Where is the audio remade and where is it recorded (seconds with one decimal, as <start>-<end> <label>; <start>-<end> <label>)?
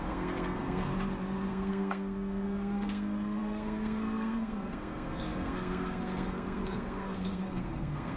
0.0-0.9 remade; 0.9-1.5 recorded; 1.5-8.2 remade